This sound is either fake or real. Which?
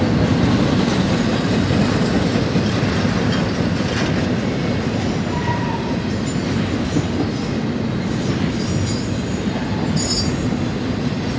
real